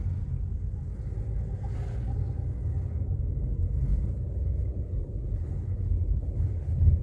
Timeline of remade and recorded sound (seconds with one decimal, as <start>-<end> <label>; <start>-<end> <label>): 0.0-3.9 recorded; 3.9-7.0 remade